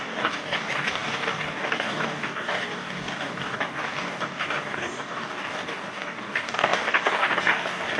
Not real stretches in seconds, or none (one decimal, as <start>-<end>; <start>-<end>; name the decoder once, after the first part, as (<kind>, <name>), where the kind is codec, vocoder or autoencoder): 0.0-8.0 (codec, DAC)